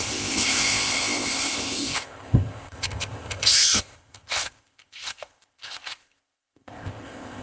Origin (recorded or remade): remade